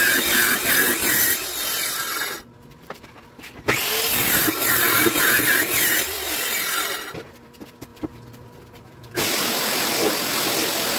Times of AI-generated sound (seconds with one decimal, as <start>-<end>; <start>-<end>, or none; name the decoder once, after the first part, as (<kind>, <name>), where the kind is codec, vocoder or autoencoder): 0.0-2.0 (vocoder, BigVGAN v2); 2.7-11.0